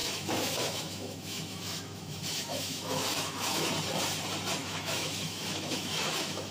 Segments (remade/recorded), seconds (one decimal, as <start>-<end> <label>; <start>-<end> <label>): 0.0-3.7 remade; 3.7-4.6 recorded; 4.6-6.5 remade